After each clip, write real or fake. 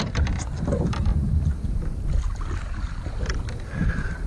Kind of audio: real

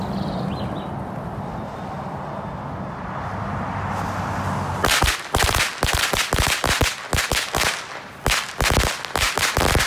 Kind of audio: real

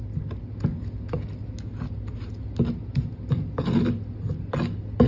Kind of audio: real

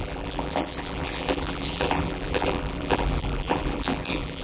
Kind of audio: fake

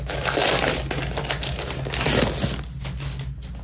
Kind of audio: real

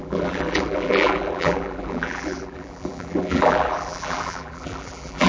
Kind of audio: fake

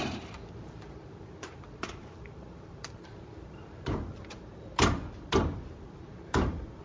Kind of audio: fake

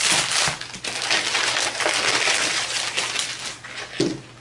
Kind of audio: real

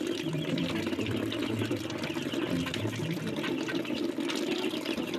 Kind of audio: fake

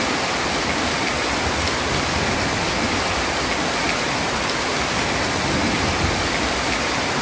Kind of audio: real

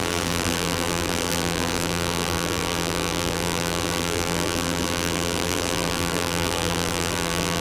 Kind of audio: fake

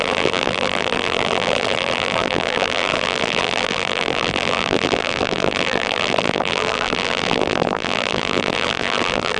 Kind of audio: fake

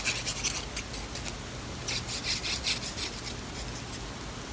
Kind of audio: real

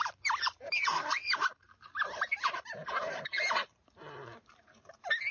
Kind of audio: fake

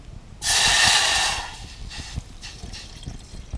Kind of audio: real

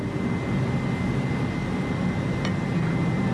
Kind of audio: real